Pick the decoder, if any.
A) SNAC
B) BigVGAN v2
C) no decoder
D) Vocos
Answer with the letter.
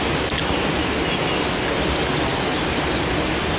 C